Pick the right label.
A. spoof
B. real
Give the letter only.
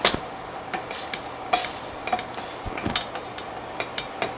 B